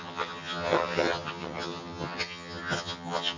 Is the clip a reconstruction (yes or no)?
yes